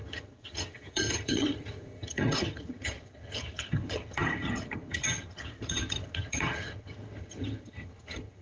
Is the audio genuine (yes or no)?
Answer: no